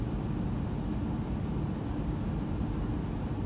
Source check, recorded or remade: recorded